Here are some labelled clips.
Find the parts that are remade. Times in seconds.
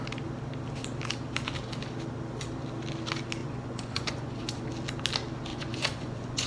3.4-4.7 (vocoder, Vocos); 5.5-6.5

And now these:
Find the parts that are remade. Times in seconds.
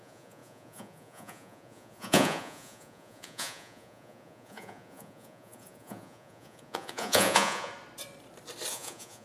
0.0-7.7 (vocoder, Vocos); 8.7-9.2